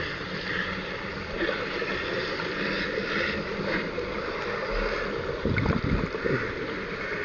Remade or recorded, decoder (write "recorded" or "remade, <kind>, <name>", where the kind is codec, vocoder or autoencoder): recorded